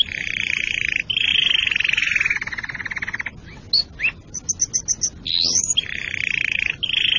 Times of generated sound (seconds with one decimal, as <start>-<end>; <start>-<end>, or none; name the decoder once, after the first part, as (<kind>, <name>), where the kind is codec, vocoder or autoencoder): none